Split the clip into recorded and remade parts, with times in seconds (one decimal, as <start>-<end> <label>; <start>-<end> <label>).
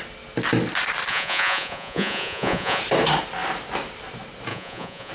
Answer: 0.0-1.1 recorded; 1.1-2.8 remade; 2.8-4.5 recorded; 4.5-5.1 remade